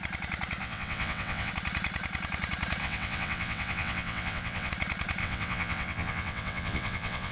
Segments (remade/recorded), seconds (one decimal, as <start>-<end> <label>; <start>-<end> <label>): 0.0-0.6 recorded; 0.6-1.5 remade; 1.5-2.8 recorded; 2.8-4.7 remade; 4.7-5.2 recorded; 5.2-7.3 remade